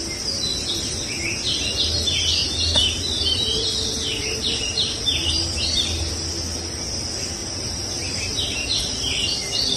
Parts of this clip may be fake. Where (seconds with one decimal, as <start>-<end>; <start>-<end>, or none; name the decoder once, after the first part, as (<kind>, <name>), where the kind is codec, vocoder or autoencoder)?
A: 2.4-6.1 (vocoder, BigVGAN v2); 7.4-8.4